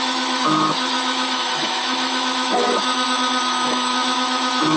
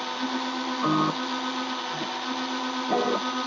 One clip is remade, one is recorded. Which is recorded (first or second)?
second